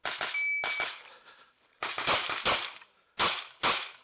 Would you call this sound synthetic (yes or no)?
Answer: no